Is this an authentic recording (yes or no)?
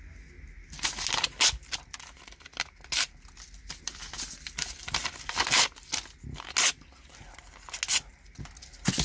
yes